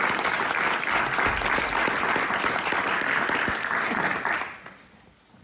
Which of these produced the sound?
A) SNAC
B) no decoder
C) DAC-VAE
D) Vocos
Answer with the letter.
B